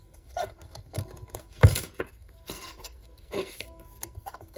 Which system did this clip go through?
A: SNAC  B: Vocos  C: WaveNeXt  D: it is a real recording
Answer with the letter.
A